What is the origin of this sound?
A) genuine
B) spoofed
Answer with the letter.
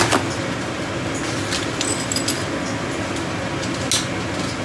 A